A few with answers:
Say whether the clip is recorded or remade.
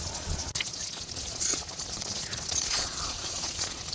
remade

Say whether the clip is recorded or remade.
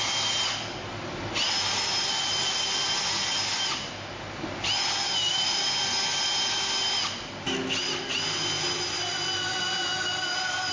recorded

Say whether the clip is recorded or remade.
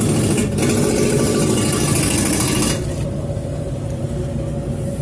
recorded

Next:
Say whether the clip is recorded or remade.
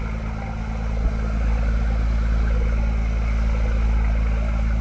recorded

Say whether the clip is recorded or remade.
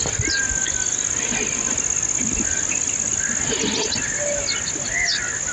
recorded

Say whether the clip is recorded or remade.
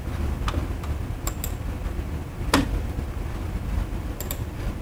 recorded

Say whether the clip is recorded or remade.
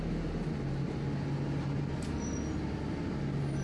recorded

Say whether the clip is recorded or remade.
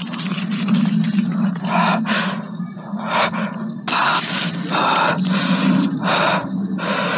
recorded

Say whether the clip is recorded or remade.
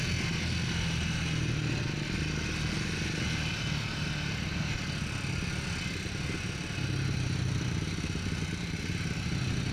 recorded